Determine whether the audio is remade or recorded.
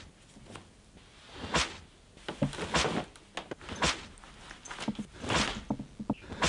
recorded